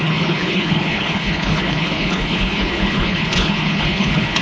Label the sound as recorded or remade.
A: remade